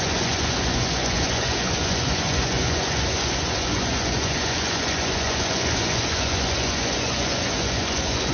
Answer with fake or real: fake